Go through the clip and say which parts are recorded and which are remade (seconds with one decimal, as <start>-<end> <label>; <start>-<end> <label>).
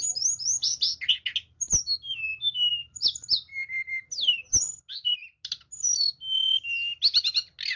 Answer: 0.0-7.8 recorded